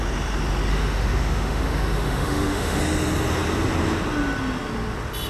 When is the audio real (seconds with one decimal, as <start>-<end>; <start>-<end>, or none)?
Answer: 0.0-0.7; 2.8-5.3